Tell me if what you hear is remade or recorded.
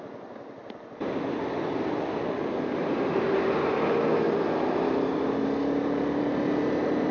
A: recorded